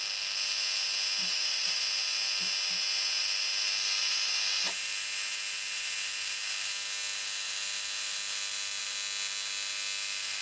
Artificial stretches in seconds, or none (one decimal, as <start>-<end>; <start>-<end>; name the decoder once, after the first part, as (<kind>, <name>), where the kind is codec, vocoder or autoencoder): 1.2-1.8 (autoencoder, DAC-VAE)